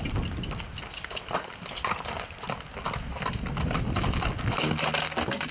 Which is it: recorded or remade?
recorded